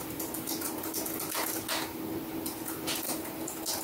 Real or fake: real